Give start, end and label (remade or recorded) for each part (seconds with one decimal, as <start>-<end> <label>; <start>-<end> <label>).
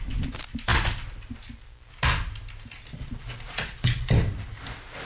0.0-3.0 recorded; 3.0-4.1 remade; 4.1-5.1 recorded